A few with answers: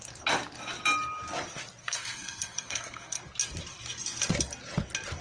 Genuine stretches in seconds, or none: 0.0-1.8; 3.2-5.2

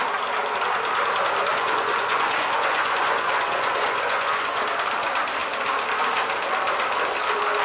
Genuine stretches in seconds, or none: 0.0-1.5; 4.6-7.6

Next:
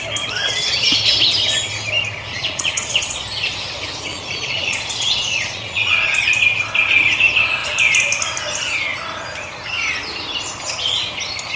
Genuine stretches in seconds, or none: 0.0-2.3; 3.2-4.1; 6.2-11.6